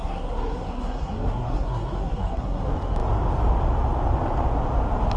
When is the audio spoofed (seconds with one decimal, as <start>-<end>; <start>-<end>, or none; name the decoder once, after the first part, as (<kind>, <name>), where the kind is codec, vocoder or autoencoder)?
0.0-2.6 (codec, SNAC)